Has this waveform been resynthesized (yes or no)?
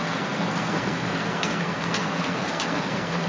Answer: yes